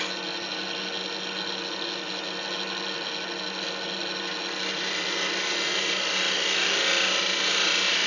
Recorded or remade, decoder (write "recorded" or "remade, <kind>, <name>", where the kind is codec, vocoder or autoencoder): recorded